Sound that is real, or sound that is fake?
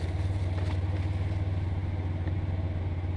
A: real